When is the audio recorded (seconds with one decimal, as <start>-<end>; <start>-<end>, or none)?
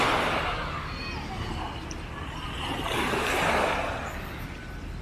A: 0.0-5.0